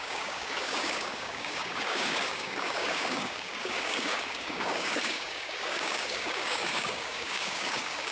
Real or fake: fake